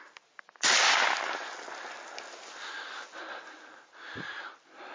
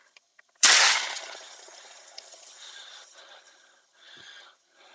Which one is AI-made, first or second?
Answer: second